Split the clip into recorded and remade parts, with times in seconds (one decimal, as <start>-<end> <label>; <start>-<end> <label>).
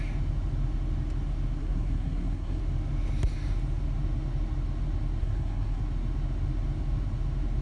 0.0-1.6 recorded; 1.6-2.6 remade; 2.6-5.2 recorded; 5.2-5.8 remade; 5.8-7.6 recorded